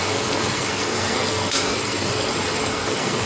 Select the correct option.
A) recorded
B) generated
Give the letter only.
B